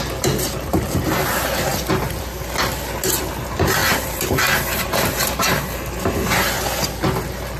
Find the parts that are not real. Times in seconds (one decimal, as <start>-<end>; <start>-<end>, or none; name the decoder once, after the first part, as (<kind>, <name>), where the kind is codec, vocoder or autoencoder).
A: 3.8-5.7 (vocoder, BigVGAN v2)